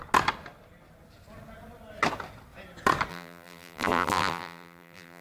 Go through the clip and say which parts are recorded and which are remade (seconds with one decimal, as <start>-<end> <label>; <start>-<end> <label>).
0.0-3.1 recorded; 3.1-5.2 remade